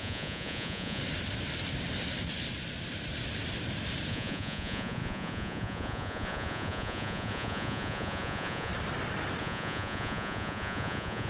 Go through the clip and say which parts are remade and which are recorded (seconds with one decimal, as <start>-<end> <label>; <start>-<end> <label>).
0.0-1.0 remade; 1.0-4.1 recorded; 4.1-8.7 remade; 8.7-9.4 recorded; 9.4-11.3 remade

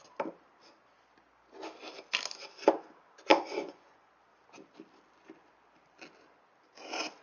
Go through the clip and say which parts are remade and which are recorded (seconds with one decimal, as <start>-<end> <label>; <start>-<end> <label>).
0.0-3.3 recorded; 3.3-4.1 remade; 4.1-7.2 recorded

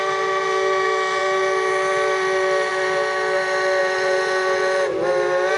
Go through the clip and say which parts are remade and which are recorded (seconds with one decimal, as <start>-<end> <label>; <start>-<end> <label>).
0.0-3.8 recorded; 3.8-4.9 remade; 4.9-5.6 recorded